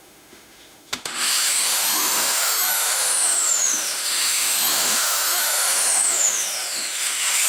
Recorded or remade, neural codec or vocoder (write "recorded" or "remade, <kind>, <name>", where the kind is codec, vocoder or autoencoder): remade, autoencoder, DAC-VAE